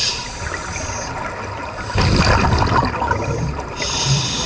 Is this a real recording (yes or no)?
yes